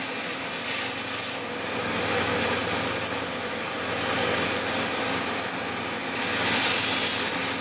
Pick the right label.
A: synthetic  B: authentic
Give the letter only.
B